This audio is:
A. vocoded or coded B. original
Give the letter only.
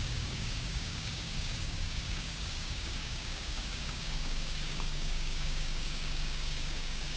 A